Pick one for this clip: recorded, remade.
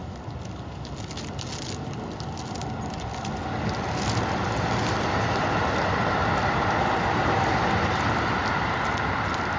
recorded